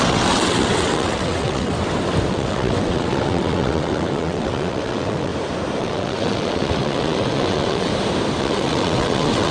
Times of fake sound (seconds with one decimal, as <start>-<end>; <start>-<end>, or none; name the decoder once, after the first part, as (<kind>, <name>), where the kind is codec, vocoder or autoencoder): 0.0-1.7 (vocoder, WaveNeXt); 2.3-5.3; 5.8-7.9; 8.4-9.5